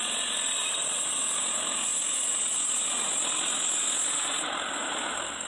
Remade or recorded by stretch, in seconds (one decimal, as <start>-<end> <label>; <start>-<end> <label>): 0.0-5.5 recorded